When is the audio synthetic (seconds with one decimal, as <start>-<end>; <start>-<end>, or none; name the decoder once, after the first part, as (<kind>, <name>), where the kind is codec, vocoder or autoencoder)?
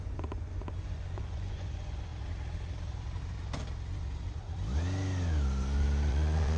0.0-2.1 (vocoder, Vocos); 6.1-6.6